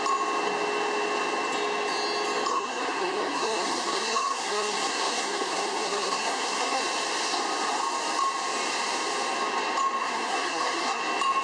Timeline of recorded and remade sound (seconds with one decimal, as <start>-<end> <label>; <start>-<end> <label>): 0.0-2.5 recorded; 2.5-6.8 remade; 6.8-10.0 recorded; 10.0-11.0 remade; 11.0-11.4 recorded